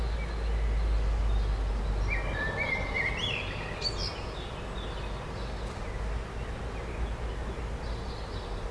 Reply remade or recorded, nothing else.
recorded